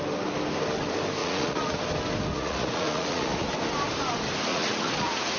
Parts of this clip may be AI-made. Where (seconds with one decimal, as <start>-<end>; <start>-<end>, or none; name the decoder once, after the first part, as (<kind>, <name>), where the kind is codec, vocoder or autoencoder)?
1.2-1.8 (vocoder, Vocos); 2.3-3.5; 4.5-5.4